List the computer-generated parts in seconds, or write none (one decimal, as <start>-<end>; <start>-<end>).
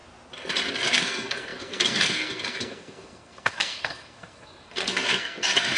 0.7-5.8